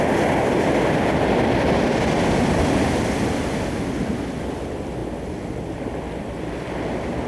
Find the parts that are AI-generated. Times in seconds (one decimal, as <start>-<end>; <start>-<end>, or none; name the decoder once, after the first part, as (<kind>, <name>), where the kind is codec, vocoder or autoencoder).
none